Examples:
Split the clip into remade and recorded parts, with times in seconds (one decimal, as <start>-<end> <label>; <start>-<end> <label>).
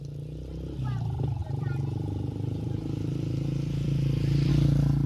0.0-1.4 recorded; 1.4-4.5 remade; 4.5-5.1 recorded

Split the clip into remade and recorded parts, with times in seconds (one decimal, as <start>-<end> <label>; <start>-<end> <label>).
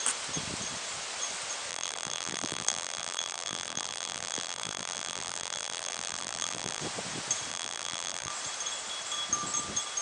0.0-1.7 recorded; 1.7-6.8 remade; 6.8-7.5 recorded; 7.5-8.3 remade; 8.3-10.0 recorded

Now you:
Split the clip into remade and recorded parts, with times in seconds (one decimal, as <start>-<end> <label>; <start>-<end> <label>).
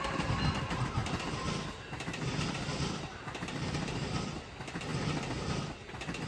0.0-6.3 recorded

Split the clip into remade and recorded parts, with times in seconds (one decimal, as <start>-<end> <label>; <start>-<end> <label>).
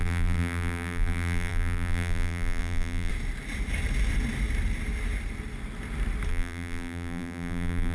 0.0-3.1 remade; 3.1-6.3 recorded; 6.3-7.9 remade